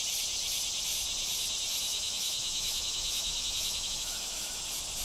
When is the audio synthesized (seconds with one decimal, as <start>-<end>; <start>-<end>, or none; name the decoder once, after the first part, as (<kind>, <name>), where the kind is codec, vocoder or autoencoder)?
1.9-4.6 (autoencoder, DAC-VAE)